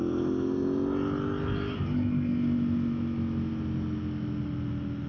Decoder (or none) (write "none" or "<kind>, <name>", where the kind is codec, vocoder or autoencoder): none